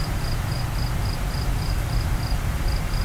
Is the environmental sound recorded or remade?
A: remade